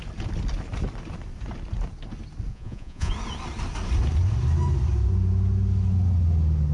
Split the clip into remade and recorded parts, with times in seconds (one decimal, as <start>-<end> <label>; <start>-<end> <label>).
0.0-2.5 recorded; 2.5-3.1 remade; 3.1-6.7 recorded